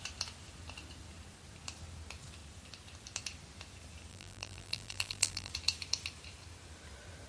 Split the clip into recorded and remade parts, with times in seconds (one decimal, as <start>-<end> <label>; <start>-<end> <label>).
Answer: 0.0-4.1 recorded; 4.1-5.5 remade; 5.5-7.3 recorded